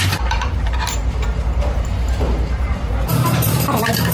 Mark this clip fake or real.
fake